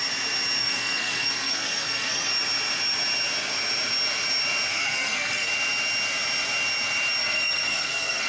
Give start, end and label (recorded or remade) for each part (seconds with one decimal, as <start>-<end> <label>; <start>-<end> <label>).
0.0-0.6 recorded; 0.6-2.3 remade; 2.3-4.7 recorded; 4.7-5.5 remade; 5.5-7.2 recorded; 7.2-8.3 remade